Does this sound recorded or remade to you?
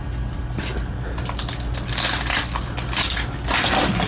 recorded